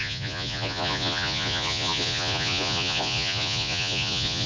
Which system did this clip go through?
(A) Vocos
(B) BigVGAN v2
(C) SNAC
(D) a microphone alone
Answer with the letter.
A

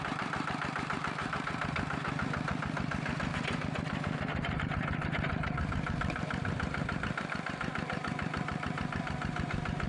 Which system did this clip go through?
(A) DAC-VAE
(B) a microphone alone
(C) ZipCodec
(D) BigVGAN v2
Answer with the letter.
D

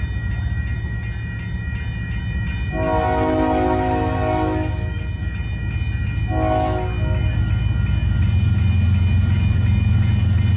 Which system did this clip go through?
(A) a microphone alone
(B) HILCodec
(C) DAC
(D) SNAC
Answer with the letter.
A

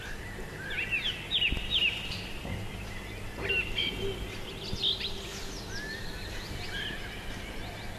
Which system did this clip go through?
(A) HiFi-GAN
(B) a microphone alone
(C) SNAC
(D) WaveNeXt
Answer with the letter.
B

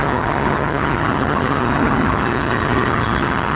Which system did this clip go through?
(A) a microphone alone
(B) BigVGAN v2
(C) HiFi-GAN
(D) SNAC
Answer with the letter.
C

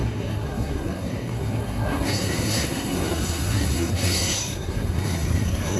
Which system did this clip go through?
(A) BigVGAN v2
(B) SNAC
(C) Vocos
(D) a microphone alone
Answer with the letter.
B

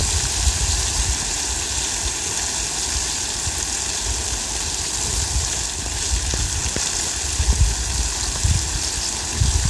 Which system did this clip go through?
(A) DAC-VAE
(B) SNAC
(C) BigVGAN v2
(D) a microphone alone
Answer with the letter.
D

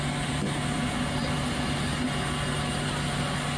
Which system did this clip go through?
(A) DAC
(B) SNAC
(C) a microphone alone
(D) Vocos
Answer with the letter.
C